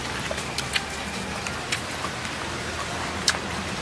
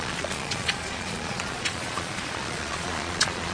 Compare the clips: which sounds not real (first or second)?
second